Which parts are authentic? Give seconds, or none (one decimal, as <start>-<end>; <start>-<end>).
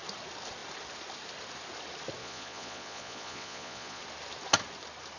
0.0-2.2; 4.0-5.2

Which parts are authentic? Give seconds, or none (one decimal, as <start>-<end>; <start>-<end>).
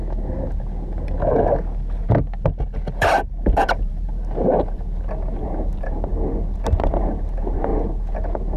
0.0-3.4; 6.1-6.9; 7.7-8.6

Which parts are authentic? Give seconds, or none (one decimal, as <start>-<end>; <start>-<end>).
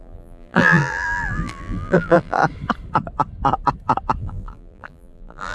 2.4-4.2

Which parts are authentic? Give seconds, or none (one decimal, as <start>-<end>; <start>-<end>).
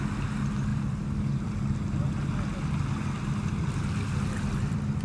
0.0-5.0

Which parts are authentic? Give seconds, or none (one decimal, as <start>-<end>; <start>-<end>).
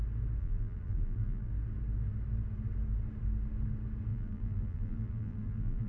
0.0-0.4; 1.5-4.1